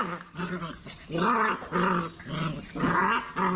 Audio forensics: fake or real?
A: real